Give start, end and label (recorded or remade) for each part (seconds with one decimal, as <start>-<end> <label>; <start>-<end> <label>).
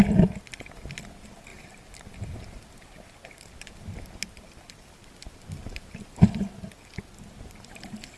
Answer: 0.0-8.2 recorded